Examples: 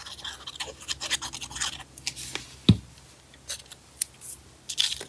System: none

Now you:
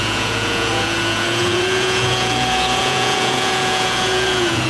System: vocoder, Vocos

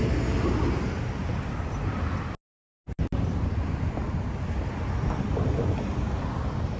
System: none